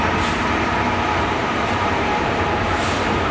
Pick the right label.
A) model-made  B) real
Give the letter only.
A